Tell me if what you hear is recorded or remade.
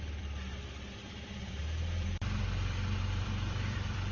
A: remade